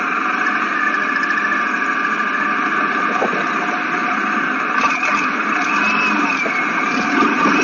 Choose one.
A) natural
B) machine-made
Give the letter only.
A